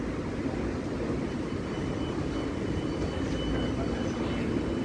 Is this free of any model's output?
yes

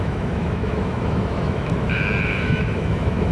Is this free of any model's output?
no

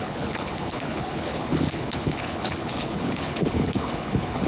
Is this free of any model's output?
no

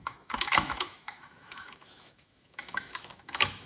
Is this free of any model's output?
no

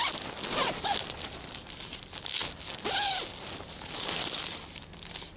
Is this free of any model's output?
yes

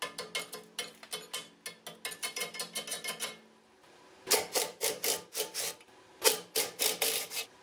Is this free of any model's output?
yes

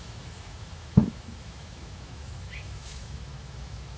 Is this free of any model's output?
no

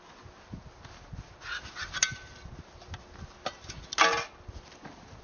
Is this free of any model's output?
yes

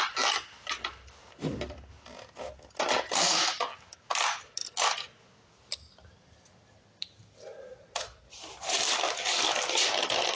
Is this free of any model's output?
yes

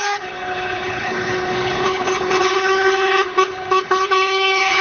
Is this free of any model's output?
no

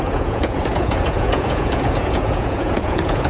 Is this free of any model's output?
no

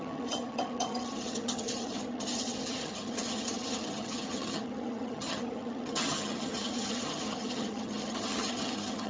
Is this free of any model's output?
no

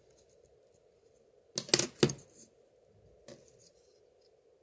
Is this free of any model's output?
yes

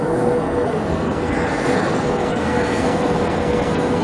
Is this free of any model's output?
no